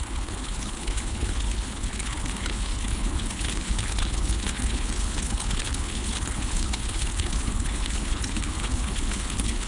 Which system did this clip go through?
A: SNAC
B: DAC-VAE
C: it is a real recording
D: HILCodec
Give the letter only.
D